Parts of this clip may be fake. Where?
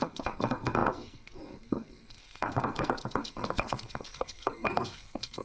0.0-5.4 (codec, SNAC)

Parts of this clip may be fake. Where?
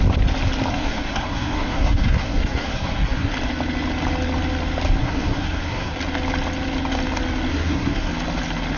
0.7-3.3 (codec, SNAC); 5.0-5.9; 7.5-8.1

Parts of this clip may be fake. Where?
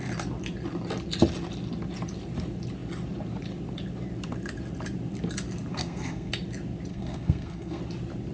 5.7-6.3 (codec, SNAC); 6.9-7.8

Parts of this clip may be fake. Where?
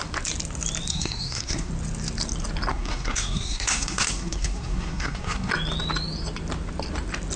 0.9-1.7 (codec, SNAC); 2.7-5.5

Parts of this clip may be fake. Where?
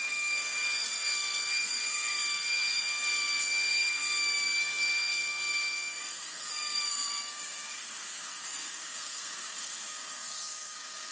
0.0-11.1 (codec, SNAC)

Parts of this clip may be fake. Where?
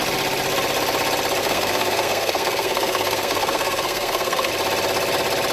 1.4-4.5 (codec, SNAC)